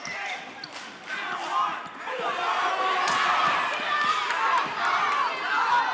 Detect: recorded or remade recorded